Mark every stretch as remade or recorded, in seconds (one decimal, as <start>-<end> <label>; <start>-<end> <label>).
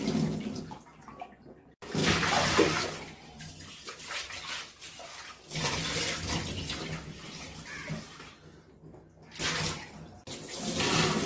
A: 0.0-11.3 recorded